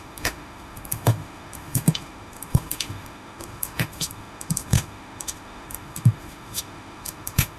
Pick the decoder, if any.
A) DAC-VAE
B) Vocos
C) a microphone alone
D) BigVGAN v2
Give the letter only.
A